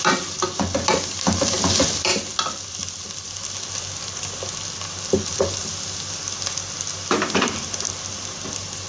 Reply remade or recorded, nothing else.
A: recorded